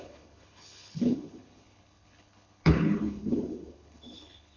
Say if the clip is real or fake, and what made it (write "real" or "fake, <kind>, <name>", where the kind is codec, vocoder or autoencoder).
fake, codec, HILCodec